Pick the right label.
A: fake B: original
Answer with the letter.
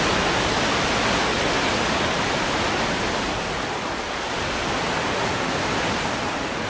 B